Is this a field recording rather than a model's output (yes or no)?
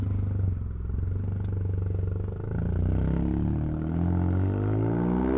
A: yes